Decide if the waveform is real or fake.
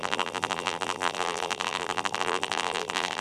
fake